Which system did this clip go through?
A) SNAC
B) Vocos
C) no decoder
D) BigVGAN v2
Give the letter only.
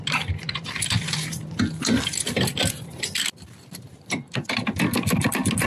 C